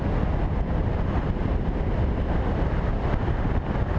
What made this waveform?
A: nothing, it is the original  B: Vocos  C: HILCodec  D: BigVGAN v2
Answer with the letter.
A